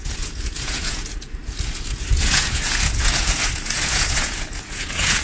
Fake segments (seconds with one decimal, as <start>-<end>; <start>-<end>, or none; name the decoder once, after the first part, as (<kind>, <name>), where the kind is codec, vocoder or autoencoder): 0.0-5.2 (vocoder, Vocos)